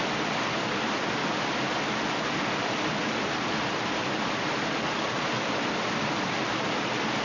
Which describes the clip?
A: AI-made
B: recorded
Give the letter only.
B